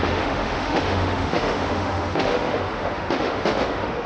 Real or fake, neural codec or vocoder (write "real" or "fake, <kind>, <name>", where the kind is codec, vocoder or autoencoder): fake, autoencoder, DAC-VAE